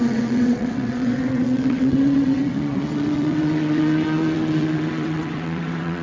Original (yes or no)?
no